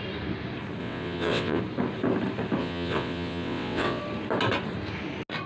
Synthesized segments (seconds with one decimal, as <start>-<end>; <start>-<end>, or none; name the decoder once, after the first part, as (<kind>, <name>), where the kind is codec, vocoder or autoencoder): 0.8-1.6 (vocoder, WaveNeXt); 2.6-4.0